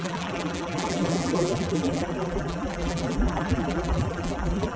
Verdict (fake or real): fake